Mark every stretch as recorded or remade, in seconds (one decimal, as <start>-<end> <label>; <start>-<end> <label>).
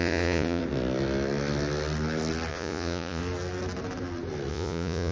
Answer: 0.0-0.6 remade; 0.6-2.5 recorded; 2.5-3.2 remade; 3.2-4.5 recorded; 4.5-5.1 remade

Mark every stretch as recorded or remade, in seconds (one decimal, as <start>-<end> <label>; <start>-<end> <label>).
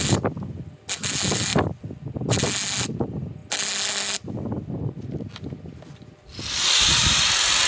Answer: 0.0-7.7 recorded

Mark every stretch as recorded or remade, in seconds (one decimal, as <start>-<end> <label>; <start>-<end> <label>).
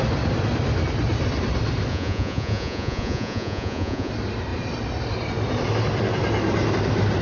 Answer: 0.0-1.9 recorded; 1.9-4.1 remade; 4.1-7.2 recorded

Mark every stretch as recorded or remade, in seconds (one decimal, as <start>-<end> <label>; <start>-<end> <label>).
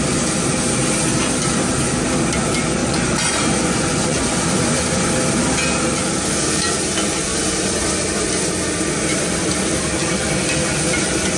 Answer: 0.0-2.8 recorded; 2.8-5.1 remade; 5.1-11.4 recorded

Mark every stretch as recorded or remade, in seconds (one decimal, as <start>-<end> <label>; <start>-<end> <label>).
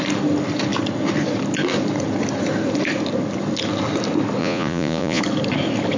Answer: 0.0-4.4 recorded; 4.4-5.2 remade; 5.2-6.0 recorded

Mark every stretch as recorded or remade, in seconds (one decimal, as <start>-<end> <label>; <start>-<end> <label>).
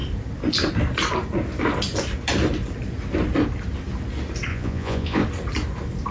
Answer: 0.0-4.5 recorded; 4.5-5.2 remade; 5.2-6.1 recorded